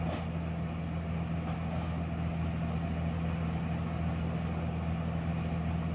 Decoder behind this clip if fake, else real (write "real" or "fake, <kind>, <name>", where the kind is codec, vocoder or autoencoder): real